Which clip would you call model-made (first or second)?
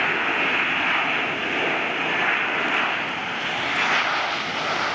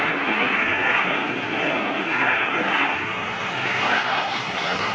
second